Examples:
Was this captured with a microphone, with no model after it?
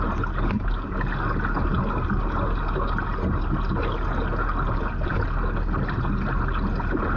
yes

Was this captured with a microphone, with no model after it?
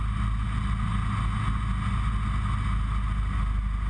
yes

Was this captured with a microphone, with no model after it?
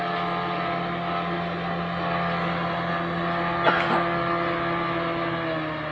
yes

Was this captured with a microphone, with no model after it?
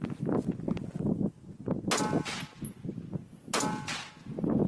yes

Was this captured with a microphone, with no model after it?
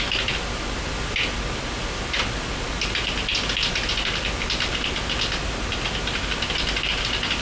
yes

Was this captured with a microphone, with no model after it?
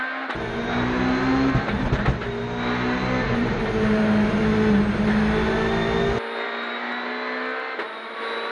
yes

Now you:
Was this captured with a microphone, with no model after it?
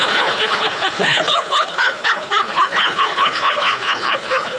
no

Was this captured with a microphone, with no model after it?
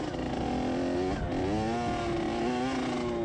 yes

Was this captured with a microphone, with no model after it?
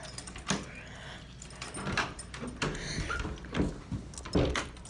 yes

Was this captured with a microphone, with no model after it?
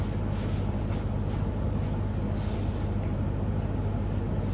yes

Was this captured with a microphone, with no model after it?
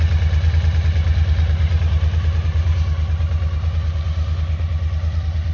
yes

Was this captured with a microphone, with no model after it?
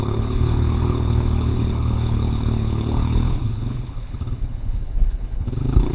no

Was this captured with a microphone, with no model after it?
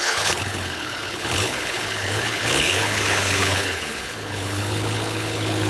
no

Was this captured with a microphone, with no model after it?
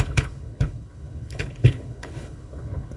no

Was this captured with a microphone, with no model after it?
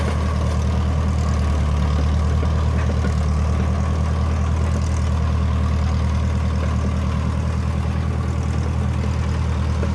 yes